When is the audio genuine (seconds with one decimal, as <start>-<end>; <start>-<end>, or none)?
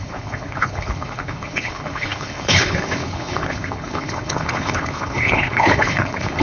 none